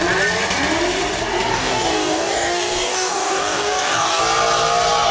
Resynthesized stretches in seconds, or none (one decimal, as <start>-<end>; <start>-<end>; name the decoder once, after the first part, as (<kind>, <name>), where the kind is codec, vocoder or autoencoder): 1.5-4.2 (codec, DAC)